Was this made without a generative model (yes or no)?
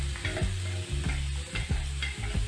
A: yes